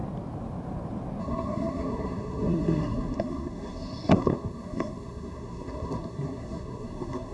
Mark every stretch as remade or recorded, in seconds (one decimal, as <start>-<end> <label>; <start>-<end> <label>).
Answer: 0.0-1.2 recorded; 1.2-7.3 remade